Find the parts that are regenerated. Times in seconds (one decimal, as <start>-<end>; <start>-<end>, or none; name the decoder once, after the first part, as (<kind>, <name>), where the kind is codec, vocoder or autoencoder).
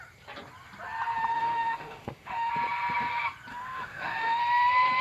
1.3-2.5 (autoencoder, DAC-VAE); 3.5-4.4